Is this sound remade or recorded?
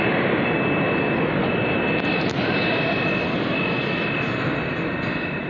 recorded